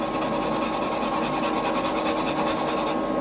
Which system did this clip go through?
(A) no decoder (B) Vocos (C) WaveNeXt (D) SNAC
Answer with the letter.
A